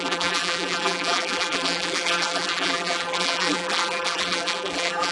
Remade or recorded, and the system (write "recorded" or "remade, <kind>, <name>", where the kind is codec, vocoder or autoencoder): remade, vocoder, BigVGAN v2